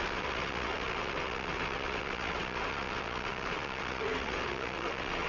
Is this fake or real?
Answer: fake